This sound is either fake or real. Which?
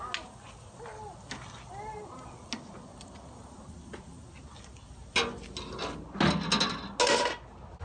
real